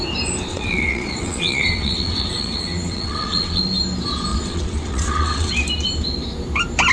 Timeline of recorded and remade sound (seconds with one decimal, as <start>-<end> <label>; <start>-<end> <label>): 0.0-0.5 recorded; 0.5-3.6 remade; 3.6-4.3 recorded; 4.3-5.5 remade; 5.5-6.9 recorded